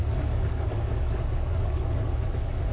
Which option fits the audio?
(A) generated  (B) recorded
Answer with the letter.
A